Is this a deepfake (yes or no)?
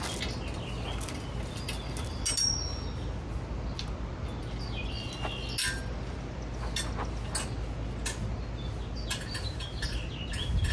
no